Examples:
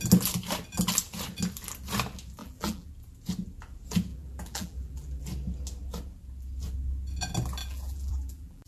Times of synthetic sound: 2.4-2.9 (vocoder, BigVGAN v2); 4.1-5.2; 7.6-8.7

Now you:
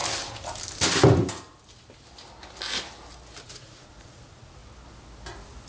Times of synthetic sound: 3.4-4.6 (vocoder, Vocos)

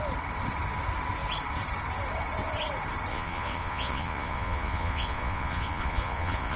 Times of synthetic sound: 3.1-6.6 (vocoder, Vocos)

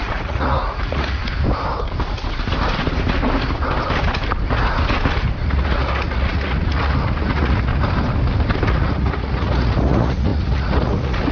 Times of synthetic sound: 0.0-1.2 (vocoder, Vocos); 5.4-7.7; 8.7-11.3